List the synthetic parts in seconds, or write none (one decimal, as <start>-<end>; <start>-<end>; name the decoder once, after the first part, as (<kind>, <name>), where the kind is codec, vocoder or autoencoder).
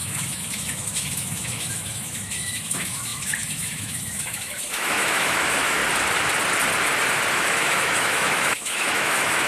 0.0-5.8 (autoencoder, DAC-VAE); 7.3-9.5